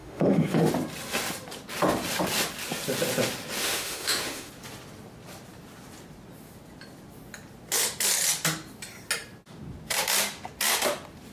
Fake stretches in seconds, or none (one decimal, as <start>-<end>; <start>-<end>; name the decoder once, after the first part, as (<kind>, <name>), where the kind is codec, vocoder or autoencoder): 0.0-0.7 (autoencoder, DAC-VAE); 3.6-4.5